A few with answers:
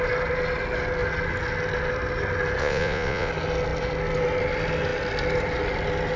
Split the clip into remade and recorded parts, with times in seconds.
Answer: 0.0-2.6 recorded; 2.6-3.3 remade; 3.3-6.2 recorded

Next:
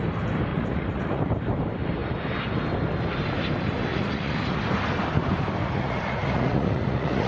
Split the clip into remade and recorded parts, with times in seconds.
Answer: 0.0-0.5 recorded; 0.5-1.2 remade; 1.2-3.9 recorded; 3.9-4.6 remade; 4.6-5.6 recorded; 5.6-7.3 remade